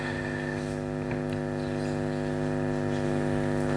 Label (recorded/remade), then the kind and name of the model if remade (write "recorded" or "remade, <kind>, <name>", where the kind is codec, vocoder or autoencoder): recorded